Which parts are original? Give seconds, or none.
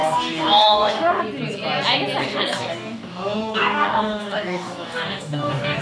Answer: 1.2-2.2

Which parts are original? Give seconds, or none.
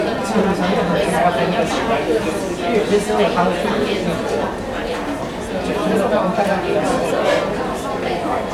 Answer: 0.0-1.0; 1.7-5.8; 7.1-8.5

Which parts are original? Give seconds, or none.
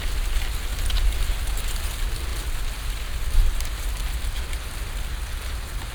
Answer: 0.0-5.9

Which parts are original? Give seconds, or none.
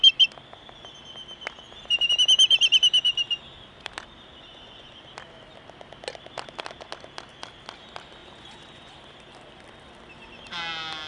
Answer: 0.0-4.5; 5.0-8.2; 8.9-11.1